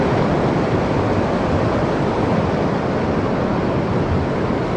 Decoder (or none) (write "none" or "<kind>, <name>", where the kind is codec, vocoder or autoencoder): none